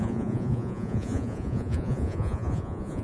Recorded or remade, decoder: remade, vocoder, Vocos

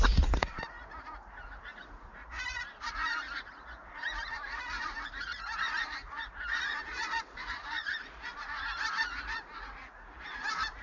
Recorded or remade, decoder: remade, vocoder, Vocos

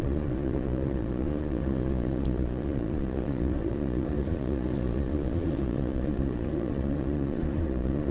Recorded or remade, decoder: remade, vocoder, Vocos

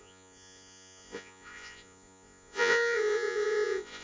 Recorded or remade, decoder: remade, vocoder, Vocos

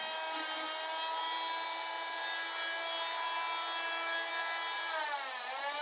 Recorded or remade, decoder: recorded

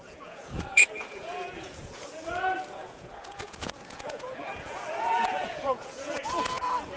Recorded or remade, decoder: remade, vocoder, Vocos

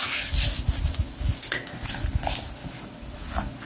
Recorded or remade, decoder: recorded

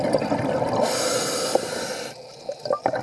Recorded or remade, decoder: recorded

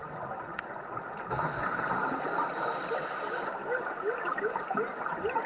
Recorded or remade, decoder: recorded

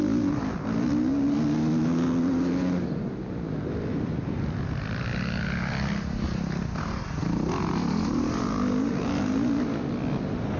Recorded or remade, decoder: recorded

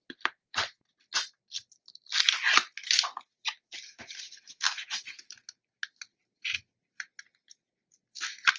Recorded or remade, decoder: recorded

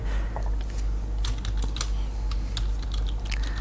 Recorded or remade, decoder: recorded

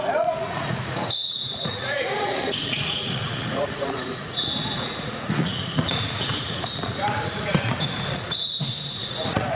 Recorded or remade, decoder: remade, vocoder, Vocos